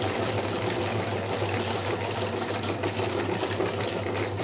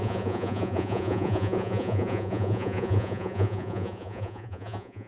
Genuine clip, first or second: first